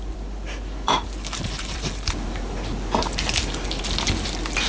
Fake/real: real